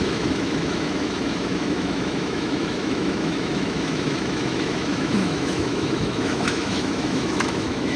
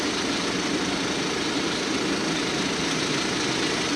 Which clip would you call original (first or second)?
second